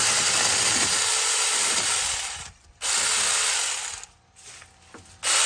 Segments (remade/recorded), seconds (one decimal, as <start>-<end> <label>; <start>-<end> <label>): 0.0-1.1 recorded; 1.1-2.7 remade; 2.7-5.5 recorded